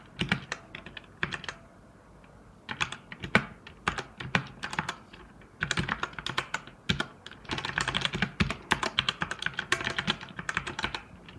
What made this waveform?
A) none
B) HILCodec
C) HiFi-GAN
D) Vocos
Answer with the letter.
A